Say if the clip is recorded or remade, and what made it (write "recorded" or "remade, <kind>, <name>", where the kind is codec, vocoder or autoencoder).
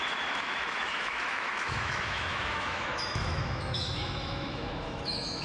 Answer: remade, autoencoder, DAC-VAE